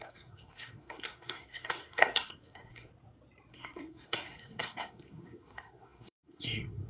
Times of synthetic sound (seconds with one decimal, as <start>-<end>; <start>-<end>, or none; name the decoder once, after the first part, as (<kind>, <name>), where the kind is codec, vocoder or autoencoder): 0.0-2.9 (codec, SNAC); 3.5-6.9